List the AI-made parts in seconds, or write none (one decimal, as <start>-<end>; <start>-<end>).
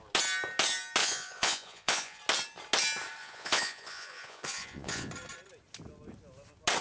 1.0-2.2; 3.2-5.1